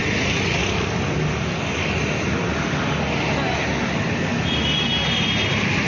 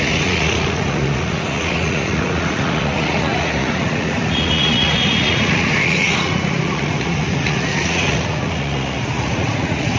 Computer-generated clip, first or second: second